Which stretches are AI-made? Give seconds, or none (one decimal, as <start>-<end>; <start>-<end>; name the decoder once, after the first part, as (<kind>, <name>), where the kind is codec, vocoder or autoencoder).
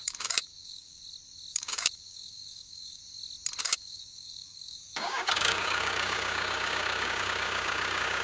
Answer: 0.0-1.0 (codec, DAC); 1.5-3.0; 3.6-8.2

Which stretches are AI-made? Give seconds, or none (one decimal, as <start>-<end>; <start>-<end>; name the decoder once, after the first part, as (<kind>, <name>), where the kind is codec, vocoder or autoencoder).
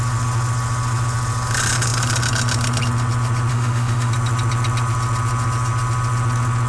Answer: 3.5-4.1 (autoencoder, DAC-VAE)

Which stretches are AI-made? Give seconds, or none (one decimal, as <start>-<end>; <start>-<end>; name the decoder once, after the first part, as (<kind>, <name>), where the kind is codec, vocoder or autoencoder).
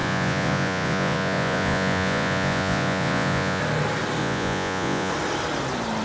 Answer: 0.0-3.6 (vocoder, Vocos); 4.2-5.1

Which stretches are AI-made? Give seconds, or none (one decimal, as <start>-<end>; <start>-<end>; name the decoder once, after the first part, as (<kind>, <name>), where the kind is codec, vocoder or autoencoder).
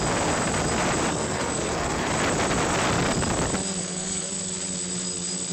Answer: 1.1-2.1 (codec, SNAC); 3.8-4.3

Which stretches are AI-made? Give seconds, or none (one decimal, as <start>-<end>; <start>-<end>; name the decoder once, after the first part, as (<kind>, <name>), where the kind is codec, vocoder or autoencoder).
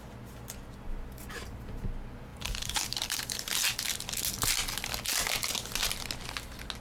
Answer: 2.3-3.5 (vocoder, BigVGAN v2)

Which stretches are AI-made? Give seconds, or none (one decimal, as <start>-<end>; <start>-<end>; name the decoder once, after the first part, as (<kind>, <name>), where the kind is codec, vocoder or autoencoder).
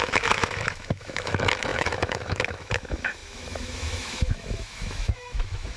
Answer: 0.0-5.8 (autoencoder, DAC-VAE)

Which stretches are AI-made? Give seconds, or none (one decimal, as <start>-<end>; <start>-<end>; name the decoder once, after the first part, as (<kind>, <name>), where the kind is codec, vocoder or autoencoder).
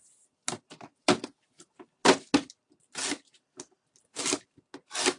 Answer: none